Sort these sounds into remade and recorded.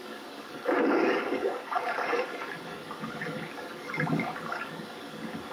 remade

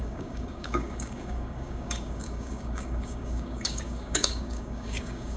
remade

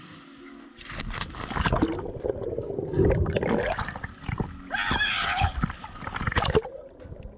recorded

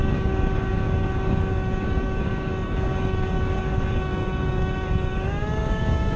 remade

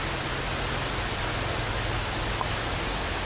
recorded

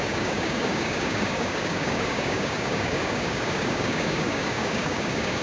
remade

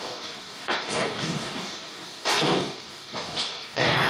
remade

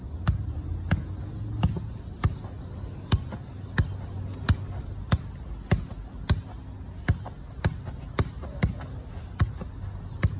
recorded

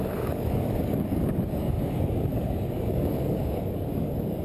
remade